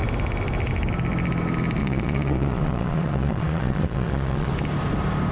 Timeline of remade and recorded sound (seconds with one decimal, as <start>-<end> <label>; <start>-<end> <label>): 0.0-1.8 recorded; 1.8-4.5 remade; 4.5-5.3 recorded